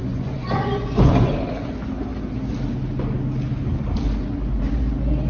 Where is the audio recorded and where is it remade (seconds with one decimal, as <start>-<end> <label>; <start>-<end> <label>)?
0.0-1.3 remade; 1.3-5.3 recorded